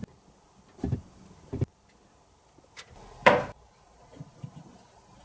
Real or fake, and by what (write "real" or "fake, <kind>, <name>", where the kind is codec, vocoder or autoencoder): real